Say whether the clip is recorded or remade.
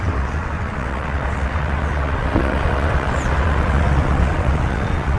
remade